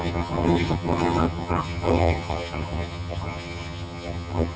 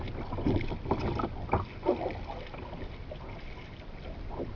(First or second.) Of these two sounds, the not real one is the first